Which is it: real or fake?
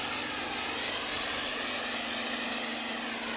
real